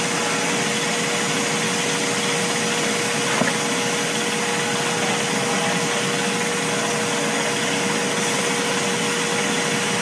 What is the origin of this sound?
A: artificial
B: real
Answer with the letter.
B